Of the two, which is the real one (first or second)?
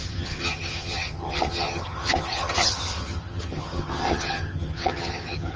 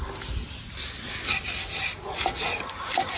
second